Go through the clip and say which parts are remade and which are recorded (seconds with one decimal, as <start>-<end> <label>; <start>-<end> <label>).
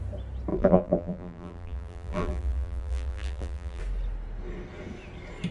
0.0-0.5 recorded; 0.5-3.8 remade; 3.8-5.5 recorded